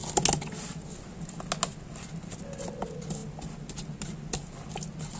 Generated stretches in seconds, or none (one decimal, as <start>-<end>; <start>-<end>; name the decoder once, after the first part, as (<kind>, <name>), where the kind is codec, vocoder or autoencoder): none